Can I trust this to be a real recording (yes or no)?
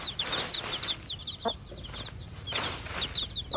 yes